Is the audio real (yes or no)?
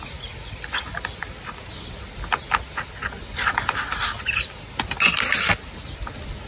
yes